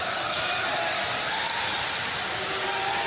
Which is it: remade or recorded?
recorded